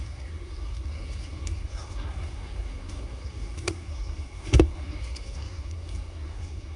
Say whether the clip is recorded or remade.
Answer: remade